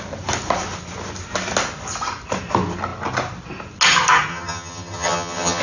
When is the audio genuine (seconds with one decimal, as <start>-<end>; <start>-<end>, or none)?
0.0-4.3